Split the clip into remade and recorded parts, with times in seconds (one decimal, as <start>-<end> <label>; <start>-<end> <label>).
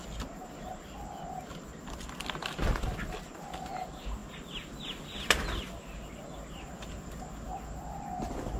0.0-8.6 recorded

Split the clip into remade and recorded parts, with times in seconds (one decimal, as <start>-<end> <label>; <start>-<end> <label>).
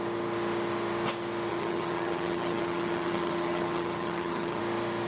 0.0-1.5 recorded; 1.5-4.6 remade; 4.6-5.1 recorded